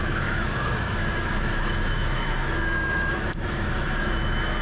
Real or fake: fake